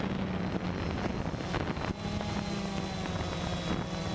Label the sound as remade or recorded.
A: recorded